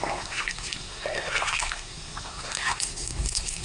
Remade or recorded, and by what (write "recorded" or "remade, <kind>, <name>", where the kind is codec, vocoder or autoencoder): remade, codec, SNAC